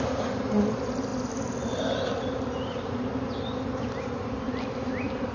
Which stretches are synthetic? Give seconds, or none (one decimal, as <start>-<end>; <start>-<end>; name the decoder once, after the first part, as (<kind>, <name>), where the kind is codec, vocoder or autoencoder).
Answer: none